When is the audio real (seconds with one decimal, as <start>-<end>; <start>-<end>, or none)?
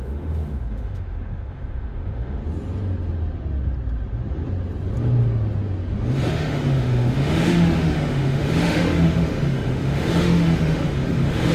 2.4-6.3